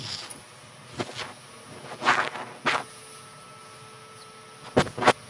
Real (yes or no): yes